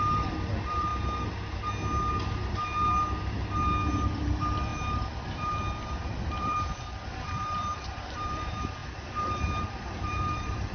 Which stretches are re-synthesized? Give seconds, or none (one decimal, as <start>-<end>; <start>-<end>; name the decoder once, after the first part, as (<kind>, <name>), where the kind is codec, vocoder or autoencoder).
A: 0.0-0.9 (vocoder, BigVGAN v2); 4.1-10.7